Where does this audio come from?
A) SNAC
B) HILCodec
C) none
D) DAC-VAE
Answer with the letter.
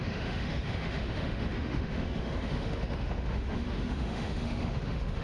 D